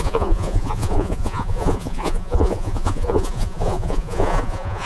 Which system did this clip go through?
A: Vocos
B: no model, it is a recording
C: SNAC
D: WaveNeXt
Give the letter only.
A